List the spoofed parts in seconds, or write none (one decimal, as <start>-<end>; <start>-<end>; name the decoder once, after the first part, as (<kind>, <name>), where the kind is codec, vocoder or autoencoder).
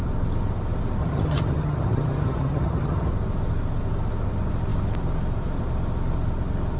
1.0-3.1 (vocoder, HiFi-GAN)